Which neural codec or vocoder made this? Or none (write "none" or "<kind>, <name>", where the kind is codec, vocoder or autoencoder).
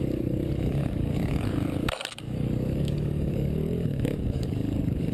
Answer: codec, DAC